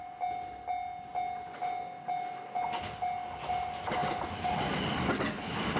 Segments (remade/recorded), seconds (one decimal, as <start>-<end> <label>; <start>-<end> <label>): 0.0-5.8 recorded